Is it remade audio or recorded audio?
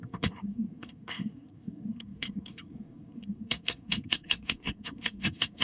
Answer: remade